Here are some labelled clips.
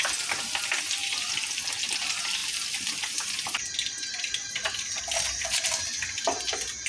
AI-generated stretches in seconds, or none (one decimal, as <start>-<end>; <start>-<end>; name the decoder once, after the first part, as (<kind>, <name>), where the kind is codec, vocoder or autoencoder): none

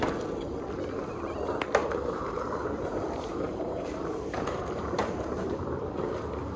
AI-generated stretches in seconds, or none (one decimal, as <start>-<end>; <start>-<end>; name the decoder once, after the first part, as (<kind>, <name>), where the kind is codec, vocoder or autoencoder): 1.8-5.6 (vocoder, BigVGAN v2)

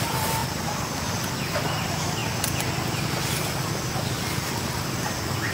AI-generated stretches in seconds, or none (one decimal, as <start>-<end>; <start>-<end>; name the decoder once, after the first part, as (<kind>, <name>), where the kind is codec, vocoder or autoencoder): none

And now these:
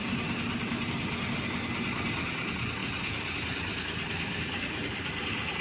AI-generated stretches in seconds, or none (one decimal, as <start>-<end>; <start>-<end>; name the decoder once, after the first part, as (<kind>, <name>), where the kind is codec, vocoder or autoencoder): 2.8-5.6 (vocoder, BigVGAN v2)

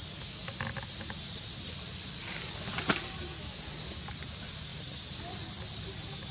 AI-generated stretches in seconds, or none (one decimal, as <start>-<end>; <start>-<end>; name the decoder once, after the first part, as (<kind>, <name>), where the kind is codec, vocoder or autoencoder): 0.4-3.4 (vocoder, BigVGAN v2); 4.7-5.2

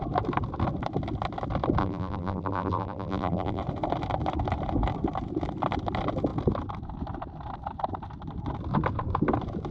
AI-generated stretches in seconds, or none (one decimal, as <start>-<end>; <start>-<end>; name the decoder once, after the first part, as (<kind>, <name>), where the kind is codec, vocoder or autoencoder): 1.8-3.6 (vocoder, BigVGAN v2)